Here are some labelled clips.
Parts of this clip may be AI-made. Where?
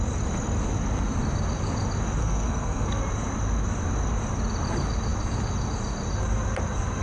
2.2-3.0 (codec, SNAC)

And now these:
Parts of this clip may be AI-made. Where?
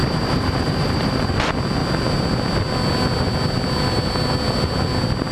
0.0-1.3 (vocoder, BigVGAN v2)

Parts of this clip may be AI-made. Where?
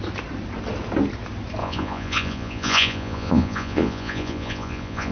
1.6-5.1 (vocoder, Vocos)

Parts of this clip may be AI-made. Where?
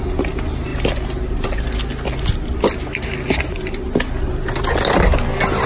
none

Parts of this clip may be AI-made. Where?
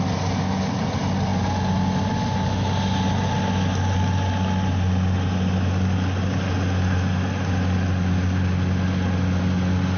none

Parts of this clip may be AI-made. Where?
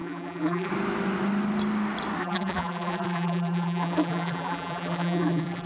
0.0-0.7 (vocoder, BigVGAN v2); 2.2-5.7